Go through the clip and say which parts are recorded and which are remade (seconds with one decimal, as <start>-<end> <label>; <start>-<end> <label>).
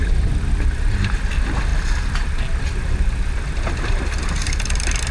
0.0-5.1 recorded